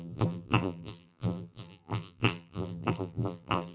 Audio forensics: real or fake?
fake